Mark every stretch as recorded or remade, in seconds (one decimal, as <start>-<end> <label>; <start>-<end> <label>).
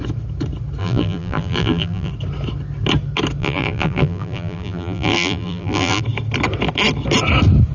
0.0-0.8 recorded; 0.8-2.1 remade; 2.1-3.4 recorded; 3.4-6.0 remade; 6.0-7.7 recorded